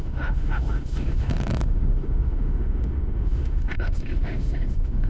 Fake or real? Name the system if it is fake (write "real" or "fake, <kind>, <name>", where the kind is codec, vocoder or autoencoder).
fake, autoencoder, DAC-VAE